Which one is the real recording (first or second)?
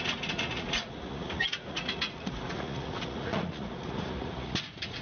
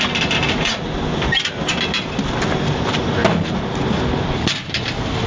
second